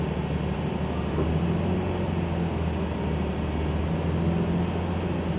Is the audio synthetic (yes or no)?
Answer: no